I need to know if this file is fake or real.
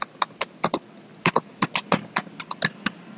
real